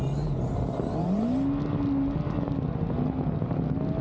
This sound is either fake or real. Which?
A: real